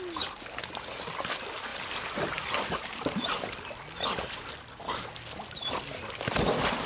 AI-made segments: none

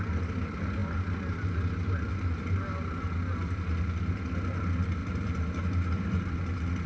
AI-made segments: 5.0-6.2 (vocoder, BigVGAN v2)

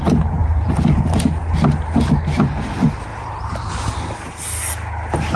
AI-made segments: 0.4-1.4 (vocoder, BigVGAN v2); 3.1-3.7

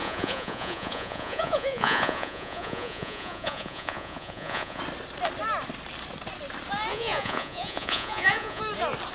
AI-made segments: 0.0-4.8 (vocoder, Vocos); 6.9-8.6

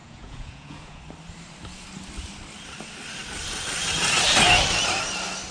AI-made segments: 0.0-1.0 (vocoder, Vocos)